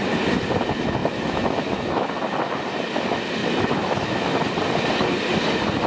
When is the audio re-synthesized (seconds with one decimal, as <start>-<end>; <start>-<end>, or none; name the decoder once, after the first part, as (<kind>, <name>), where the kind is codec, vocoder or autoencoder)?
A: 1.0-2.2 (autoencoder, DAC-VAE); 3.4-4.4